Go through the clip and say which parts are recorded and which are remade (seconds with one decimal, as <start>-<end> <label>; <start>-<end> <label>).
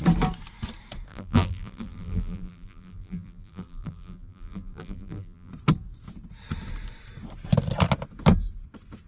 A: 0.0-1.1 recorded; 1.1-5.5 remade; 5.5-9.1 recorded